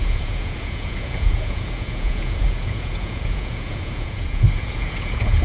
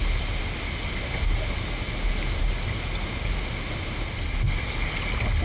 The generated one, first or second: first